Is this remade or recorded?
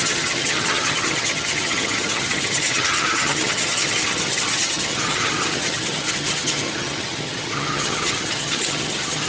remade